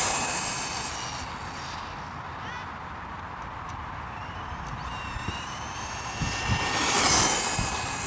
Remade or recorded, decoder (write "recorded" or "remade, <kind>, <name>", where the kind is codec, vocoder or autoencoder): recorded